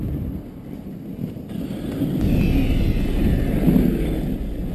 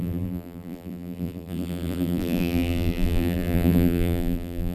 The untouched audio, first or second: first